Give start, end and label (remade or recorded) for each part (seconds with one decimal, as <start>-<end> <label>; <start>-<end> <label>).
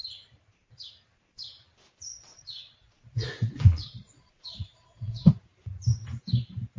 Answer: 0.0-2.1 recorded; 2.1-5.3 remade; 5.3-6.8 recorded